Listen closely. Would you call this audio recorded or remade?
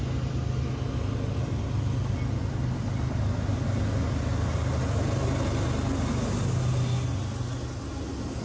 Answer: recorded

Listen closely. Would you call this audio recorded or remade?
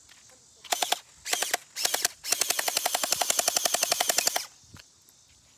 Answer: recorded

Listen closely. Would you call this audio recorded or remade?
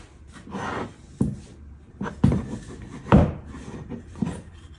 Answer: recorded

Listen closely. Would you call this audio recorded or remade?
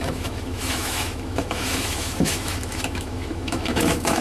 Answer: remade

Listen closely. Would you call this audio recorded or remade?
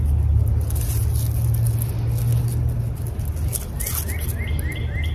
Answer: recorded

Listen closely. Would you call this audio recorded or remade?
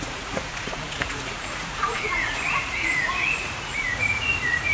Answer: remade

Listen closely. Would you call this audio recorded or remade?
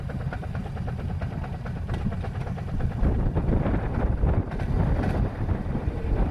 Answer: remade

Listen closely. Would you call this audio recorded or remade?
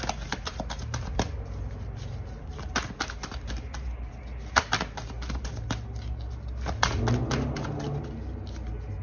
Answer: recorded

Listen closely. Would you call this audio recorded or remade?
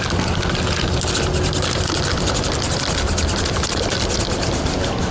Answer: recorded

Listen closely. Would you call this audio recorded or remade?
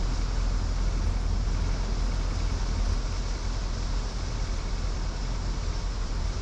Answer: recorded